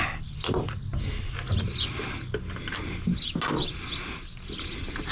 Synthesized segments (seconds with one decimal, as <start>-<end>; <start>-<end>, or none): none